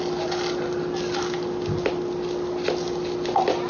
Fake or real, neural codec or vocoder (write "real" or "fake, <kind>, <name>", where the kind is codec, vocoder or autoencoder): real